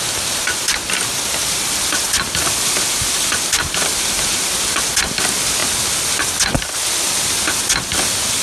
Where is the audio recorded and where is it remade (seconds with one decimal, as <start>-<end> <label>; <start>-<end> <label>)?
0.0-8.4 recorded